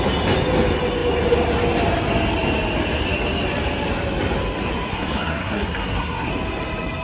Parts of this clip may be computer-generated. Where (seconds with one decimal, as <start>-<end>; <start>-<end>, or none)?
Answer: 4.9-6.3